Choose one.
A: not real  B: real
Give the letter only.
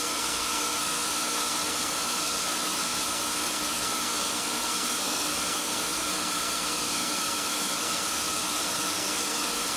A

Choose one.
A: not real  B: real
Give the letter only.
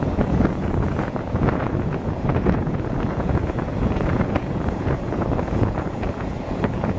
A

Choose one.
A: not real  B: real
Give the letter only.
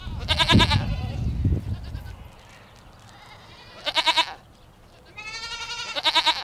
B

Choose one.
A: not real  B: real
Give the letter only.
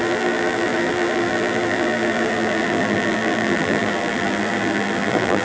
A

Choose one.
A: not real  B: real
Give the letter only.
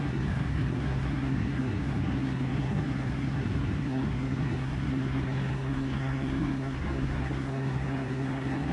A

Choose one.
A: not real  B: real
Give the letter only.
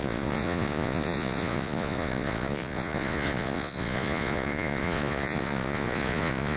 A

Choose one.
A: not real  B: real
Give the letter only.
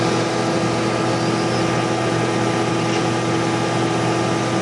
B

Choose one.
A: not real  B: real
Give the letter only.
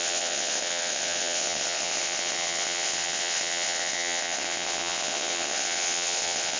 A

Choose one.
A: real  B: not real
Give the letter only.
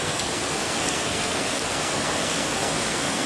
B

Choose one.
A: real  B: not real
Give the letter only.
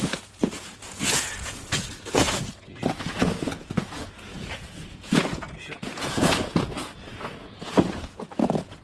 B